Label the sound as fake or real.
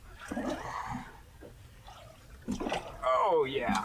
real